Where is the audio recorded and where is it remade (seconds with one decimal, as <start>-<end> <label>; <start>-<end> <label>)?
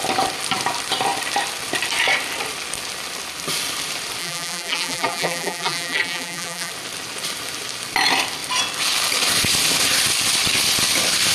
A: 0.0-4.2 recorded; 4.2-6.7 remade; 6.7-11.3 recorded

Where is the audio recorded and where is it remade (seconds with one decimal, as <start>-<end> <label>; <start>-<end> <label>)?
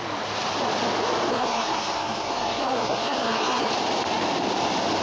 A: 0.0-1.3 recorded; 1.3-3.7 remade; 3.7-5.0 recorded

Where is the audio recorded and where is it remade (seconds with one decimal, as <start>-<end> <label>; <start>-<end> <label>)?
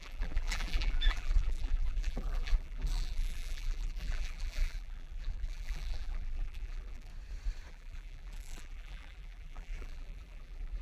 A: 0.0-7.1 remade; 7.1-7.7 recorded; 7.7-10.8 remade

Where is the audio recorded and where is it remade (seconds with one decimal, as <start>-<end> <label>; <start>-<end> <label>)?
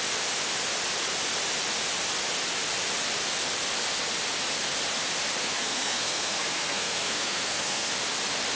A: 0.0-5.4 recorded; 5.4-7.9 remade; 7.9-8.6 recorded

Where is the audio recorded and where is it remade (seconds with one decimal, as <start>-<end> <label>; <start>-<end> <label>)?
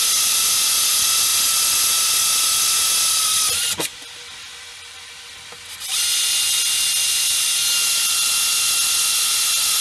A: 0.0-9.8 recorded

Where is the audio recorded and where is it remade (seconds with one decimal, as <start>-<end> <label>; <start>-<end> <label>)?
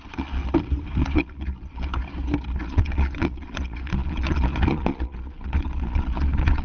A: 0.0-0.4 remade; 0.4-1.0 recorded; 1.0-2.0 remade; 2.0-2.6 recorded; 2.6-6.6 remade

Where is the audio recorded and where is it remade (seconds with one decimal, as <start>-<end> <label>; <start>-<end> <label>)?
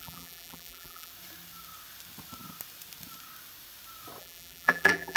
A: 0.0-1.1 remade; 1.1-4.2 recorded; 4.2-5.2 remade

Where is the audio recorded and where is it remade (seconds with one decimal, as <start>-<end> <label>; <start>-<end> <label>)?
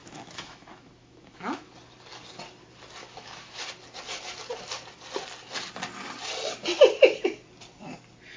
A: 0.0-1.7 remade; 1.7-3.0 recorded; 3.0-3.6 remade; 3.6-8.4 recorded